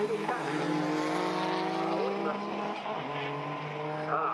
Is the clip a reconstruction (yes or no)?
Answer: no